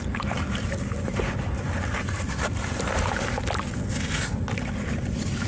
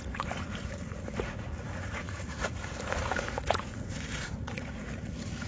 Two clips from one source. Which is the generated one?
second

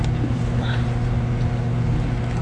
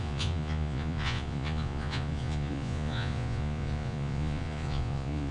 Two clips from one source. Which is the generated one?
second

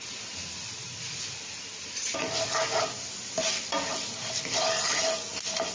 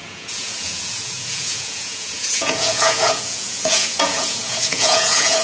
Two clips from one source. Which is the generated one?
second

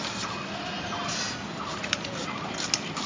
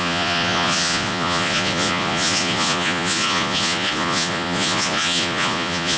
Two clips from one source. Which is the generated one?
second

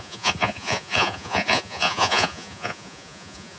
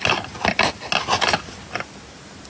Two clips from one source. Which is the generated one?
first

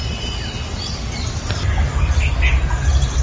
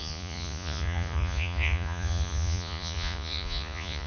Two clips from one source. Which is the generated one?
second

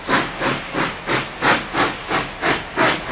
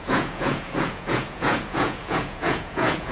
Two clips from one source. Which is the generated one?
second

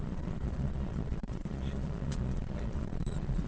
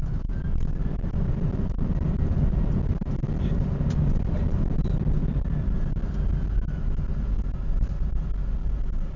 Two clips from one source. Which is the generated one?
first